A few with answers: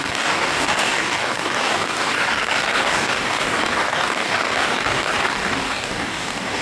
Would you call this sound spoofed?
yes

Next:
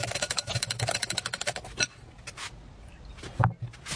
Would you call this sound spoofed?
no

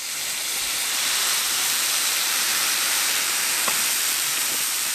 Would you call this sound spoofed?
yes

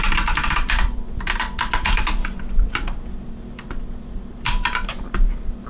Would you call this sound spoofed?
yes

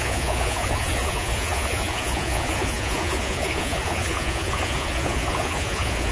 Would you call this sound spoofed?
yes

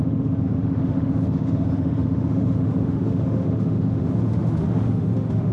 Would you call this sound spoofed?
yes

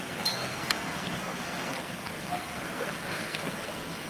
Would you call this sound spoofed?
yes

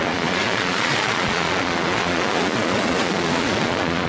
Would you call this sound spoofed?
yes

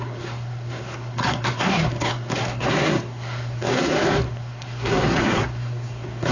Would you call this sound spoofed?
yes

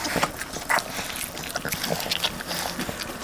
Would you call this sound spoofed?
no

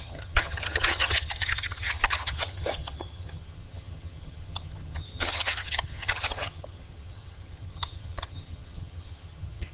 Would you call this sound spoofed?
yes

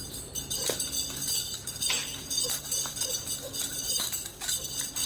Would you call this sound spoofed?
yes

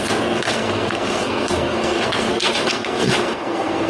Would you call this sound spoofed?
yes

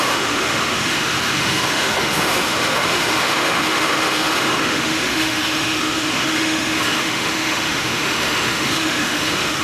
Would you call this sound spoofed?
yes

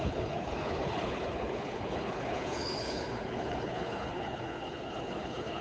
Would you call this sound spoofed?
yes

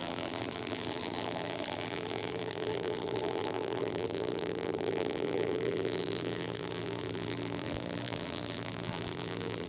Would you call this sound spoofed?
yes